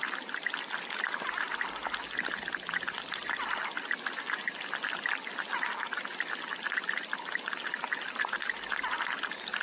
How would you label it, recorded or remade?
recorded